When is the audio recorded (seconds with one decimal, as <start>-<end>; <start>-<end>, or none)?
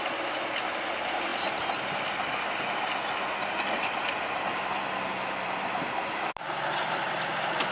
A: 0.0-7.7